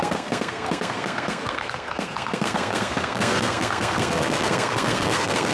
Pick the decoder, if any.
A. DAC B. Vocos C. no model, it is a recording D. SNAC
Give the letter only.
D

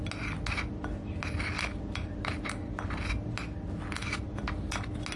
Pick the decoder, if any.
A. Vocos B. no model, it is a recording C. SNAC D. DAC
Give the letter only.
B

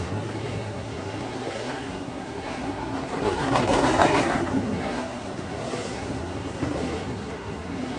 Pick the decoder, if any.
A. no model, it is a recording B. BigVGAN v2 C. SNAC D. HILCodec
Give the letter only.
C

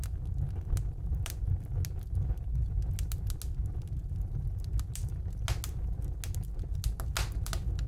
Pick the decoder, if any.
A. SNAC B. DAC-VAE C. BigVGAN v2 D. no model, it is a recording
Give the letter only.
D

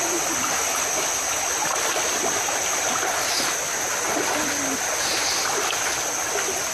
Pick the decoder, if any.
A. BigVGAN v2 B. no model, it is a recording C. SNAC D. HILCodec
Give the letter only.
B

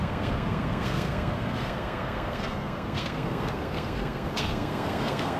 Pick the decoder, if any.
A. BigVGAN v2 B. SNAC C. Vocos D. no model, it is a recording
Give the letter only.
B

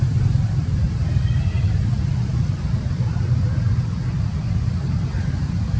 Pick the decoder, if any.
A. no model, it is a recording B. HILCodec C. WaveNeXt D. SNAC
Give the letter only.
A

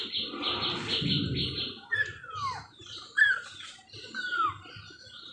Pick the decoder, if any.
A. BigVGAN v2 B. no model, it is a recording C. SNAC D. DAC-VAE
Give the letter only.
B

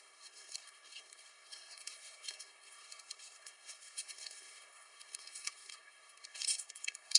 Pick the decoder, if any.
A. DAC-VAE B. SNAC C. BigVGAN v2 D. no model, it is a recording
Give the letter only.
B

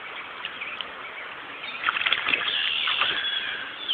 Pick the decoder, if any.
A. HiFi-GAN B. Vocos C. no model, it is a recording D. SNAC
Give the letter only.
C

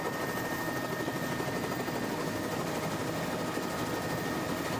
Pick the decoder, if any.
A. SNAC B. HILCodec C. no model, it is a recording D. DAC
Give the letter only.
C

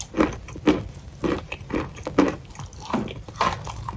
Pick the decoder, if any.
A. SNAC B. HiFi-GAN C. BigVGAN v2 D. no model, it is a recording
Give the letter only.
D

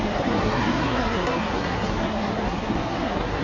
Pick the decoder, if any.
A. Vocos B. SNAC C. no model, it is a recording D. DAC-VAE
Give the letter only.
B